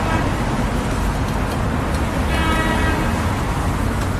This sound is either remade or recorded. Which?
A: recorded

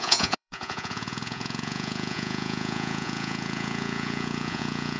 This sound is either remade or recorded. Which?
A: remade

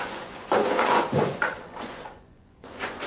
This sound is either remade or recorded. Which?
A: remade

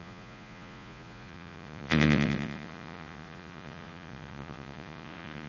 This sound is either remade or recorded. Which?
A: remade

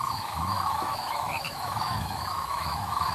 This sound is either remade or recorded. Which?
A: remade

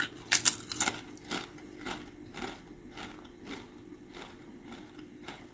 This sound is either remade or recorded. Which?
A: recorded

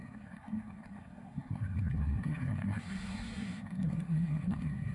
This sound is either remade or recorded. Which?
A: remade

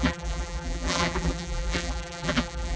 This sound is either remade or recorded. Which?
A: remade